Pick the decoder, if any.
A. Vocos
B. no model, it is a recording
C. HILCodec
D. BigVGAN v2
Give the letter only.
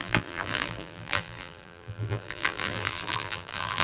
D